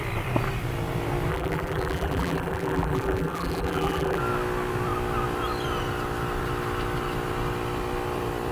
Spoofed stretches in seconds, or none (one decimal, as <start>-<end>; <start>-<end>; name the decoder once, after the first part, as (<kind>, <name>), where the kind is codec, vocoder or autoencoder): 1.3-4.2 (vocoder, BigVGAN v2)